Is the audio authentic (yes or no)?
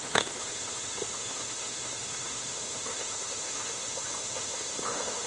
no